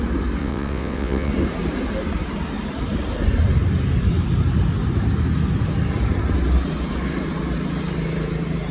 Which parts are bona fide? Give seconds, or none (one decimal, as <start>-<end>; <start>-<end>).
0.0-0.4; 1.3-8.7